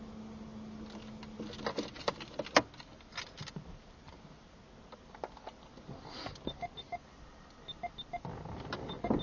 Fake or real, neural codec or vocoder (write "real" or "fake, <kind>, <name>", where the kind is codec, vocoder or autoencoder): real